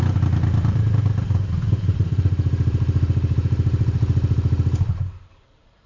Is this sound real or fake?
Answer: fake